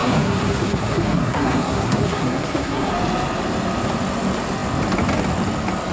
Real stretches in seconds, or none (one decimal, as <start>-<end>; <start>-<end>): 2.9-5.9